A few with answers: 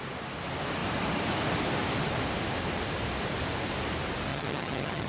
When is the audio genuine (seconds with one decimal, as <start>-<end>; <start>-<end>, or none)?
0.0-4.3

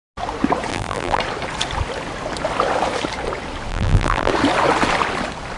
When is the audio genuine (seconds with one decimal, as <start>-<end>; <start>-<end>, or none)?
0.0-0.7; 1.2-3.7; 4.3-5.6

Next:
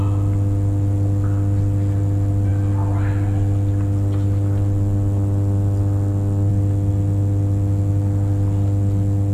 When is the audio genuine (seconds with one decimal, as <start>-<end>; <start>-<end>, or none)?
0.0-9.3

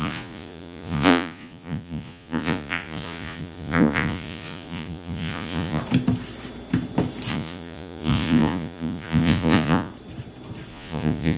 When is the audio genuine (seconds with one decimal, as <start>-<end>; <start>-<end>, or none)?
5.8-7.3; 9.9-10.7

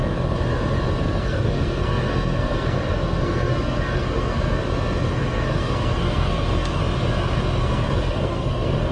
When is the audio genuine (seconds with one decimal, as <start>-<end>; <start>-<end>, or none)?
0.0-1.0; 4.6-5.2; 6.8-7.6

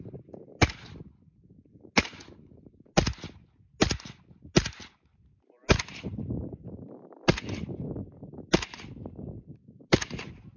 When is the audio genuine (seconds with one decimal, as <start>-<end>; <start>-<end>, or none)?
0.0-10.6

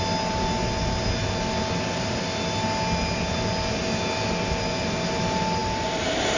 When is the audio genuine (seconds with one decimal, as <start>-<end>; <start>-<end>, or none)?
0.0-6.4

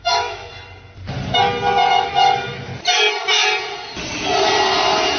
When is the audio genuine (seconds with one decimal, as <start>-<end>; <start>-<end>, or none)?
0.5-1.9; 2.7-5.2